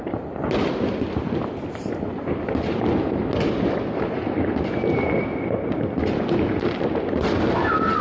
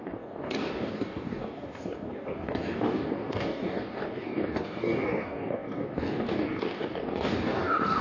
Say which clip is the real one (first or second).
first